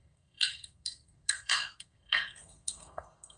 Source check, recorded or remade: remade